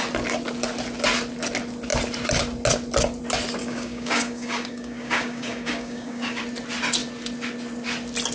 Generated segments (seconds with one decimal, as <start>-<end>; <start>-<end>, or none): 3.6-6.4